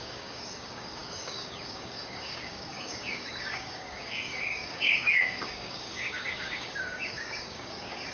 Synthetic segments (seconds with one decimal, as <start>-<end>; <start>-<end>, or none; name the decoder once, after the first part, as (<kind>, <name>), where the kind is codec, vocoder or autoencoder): 0.0-8.1 (codec, DAC)